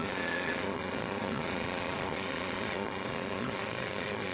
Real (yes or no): no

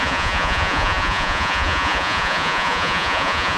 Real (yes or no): no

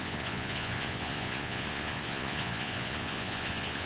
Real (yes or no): no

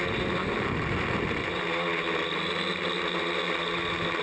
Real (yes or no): yes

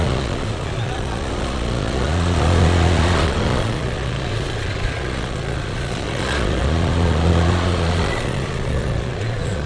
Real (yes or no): no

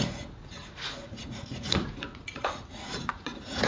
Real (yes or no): no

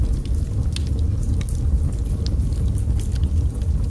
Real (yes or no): yes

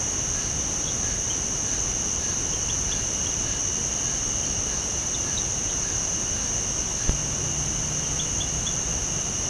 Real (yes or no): yes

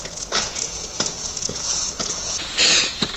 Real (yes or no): no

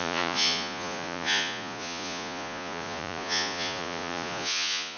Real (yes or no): no